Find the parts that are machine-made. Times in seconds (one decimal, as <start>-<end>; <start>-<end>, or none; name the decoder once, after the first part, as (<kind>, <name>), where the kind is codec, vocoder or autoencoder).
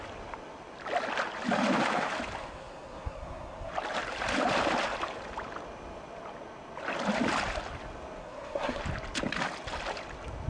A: 2.4-3.7 (codec, SNAC); 8.2-8.8